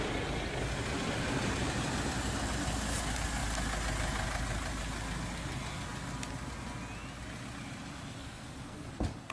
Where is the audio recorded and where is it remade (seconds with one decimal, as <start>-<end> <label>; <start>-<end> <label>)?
0.0-8.2 recorded; 8.2-8.9 remade; 8.9-9.3 recorded